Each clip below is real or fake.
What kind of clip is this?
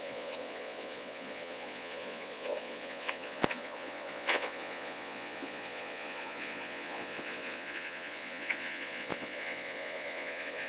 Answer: fake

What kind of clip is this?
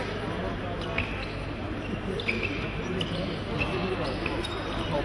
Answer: real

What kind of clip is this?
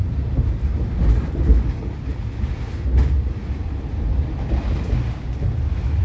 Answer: real